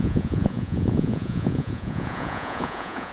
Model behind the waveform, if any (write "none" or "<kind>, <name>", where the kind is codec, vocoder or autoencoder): vocoder, Vocos